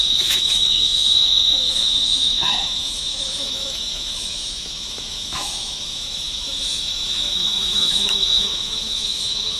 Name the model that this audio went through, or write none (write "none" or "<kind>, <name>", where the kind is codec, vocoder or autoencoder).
autoencoder, DAC-VAE